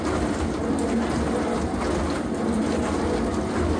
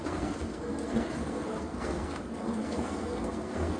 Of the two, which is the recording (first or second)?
first